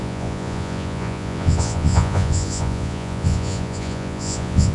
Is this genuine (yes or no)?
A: no